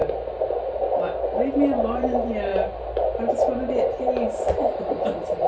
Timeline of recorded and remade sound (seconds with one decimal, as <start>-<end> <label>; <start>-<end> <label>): 0.0-1.5 recorded; 1.5-2.5 remade; 2.5-3.7 recorded; 3.7-5.5 remade